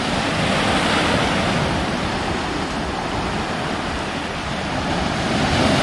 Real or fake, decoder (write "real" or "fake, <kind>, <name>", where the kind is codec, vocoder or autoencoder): real